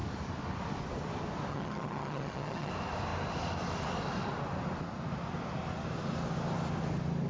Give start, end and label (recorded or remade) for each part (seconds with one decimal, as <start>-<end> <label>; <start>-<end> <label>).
0.0-1.5 recorded; 1.5-2.7 remade; 2.7-7.3 recorded